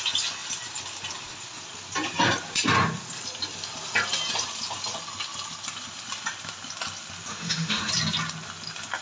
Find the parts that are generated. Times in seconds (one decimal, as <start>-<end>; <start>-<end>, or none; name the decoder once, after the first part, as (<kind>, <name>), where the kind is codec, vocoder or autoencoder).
7.3-7.9 (autoencoder, DAC-VAE)